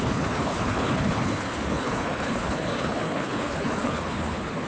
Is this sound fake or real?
fake